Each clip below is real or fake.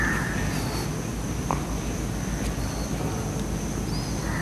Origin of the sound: real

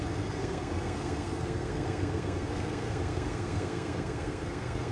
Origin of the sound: fake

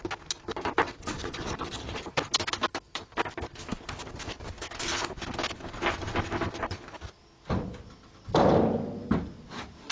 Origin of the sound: real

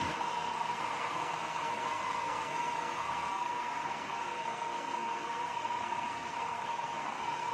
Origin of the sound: fake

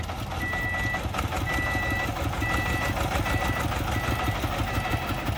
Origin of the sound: real